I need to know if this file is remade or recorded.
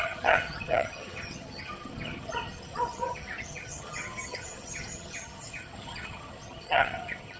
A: remade